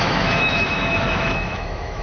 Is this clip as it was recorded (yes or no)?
no